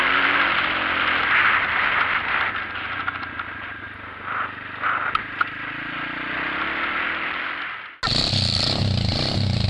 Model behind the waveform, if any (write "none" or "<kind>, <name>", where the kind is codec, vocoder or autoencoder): none